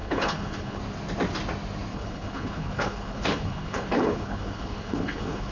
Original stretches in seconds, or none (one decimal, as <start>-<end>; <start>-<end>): 0.8-1.9